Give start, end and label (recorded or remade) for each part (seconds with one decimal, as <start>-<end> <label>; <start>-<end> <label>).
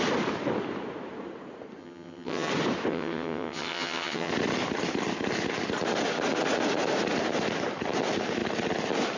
0.0-1.8 recorded; 1.8-2.5 remade; 2.5-2.9 recorded; 2.9-4.3 remade; 4.3-9.2 recorded